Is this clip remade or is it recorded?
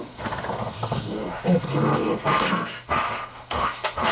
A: remade